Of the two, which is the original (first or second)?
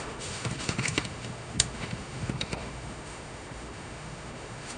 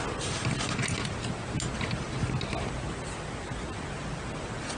second